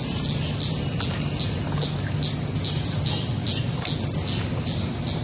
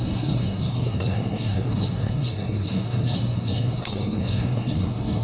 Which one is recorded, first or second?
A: first